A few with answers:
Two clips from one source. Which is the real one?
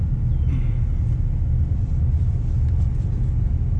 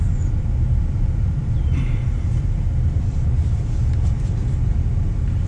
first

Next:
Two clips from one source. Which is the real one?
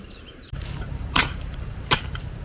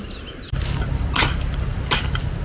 second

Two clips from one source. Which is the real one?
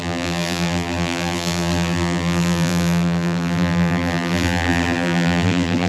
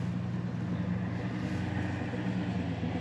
second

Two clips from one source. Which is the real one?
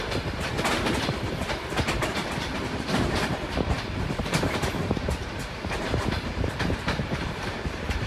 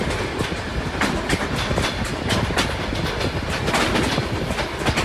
second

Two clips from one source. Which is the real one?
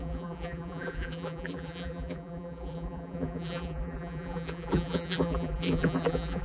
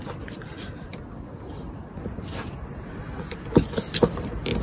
second